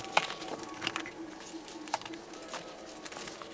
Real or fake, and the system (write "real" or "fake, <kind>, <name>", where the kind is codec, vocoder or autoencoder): real